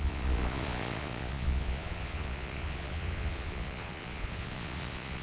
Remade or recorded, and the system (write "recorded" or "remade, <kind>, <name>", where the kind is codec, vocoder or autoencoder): remade, vocoder, Vocos